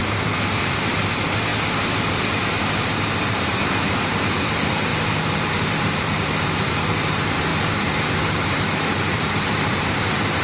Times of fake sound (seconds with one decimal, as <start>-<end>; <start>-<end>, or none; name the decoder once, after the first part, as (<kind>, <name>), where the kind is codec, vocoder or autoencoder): 0.0-1.5 (vocoder, BigVGAN v2); 2.5-10.4